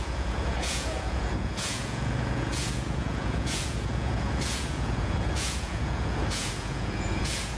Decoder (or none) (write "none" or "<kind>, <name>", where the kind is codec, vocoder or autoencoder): vocoder, Vocos